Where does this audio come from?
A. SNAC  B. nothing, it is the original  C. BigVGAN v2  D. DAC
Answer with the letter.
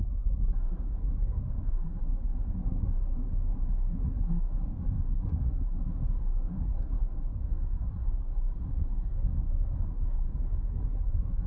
A